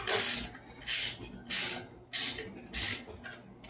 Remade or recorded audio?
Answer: recorded